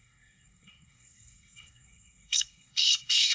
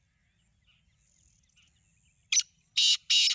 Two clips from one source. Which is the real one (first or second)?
second